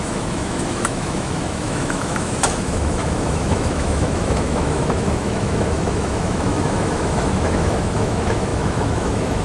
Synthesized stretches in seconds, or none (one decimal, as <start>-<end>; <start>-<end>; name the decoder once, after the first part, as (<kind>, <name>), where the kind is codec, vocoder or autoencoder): 0.0-9.4 (autoencoder, DAC-VAE)